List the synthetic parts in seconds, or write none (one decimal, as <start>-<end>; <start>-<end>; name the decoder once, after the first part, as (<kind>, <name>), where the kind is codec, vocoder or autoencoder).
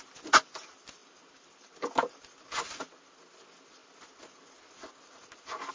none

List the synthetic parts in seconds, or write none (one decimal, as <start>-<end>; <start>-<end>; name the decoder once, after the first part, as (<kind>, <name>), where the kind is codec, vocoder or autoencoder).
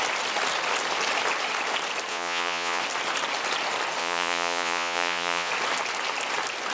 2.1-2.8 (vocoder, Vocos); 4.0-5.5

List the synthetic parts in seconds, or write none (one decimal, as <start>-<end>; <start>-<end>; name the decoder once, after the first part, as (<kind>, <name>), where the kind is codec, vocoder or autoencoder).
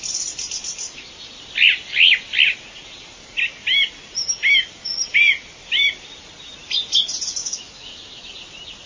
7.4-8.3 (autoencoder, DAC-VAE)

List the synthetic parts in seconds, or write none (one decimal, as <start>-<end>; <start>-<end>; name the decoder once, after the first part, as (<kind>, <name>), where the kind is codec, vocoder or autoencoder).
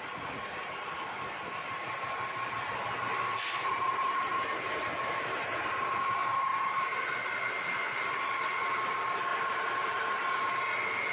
9.3-10.4 (vocoder, BigVGAN v2)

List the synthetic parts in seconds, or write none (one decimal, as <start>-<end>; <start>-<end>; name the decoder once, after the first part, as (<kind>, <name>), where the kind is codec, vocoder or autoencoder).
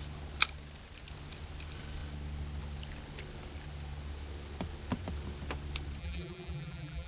6.0-7.1 (vocoder, BigVGAN v2)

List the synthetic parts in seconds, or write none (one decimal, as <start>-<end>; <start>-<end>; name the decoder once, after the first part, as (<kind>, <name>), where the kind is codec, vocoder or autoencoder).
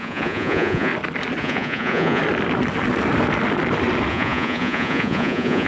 0.0-0.9 (vocoder, Vocos); 1.4-2.2; 4.1-5.7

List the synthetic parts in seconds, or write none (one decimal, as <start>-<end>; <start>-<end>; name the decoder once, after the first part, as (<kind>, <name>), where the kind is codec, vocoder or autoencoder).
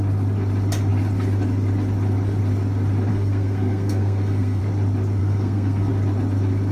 3.1-4.6 (codec, SNAC); 5.2-5.9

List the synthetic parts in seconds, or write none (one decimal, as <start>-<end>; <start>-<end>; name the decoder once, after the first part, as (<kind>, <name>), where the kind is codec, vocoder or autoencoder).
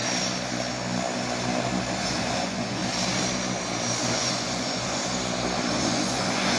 2.0-2.8 (vocoder, Vocos); 4.1-5.0; 5.7-6.6